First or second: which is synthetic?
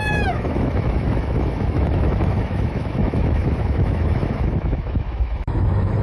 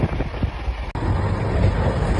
first